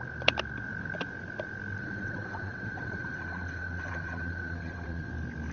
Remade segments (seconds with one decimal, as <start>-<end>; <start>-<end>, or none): 1.8-5.1